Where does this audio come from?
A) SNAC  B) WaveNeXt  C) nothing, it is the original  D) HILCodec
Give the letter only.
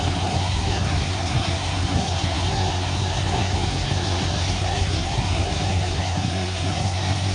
A